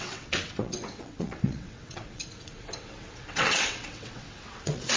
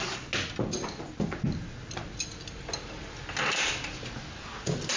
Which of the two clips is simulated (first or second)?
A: first